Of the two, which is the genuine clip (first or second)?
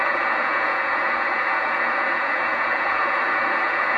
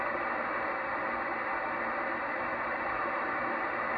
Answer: second